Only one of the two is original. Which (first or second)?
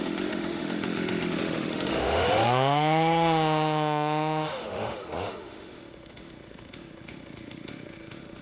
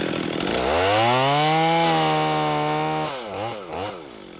second